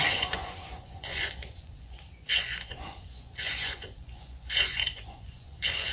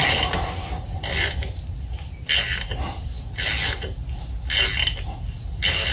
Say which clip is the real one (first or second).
second